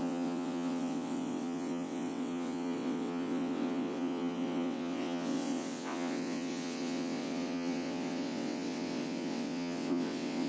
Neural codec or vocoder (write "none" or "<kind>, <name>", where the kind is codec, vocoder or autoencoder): vocoder, WaveNeXt